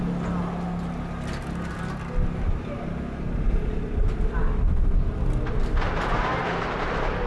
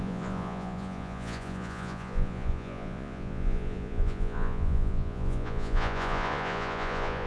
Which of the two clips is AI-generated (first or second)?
second